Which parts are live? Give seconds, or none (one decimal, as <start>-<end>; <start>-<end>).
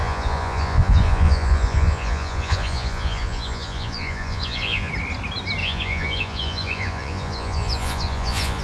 4.9-5.6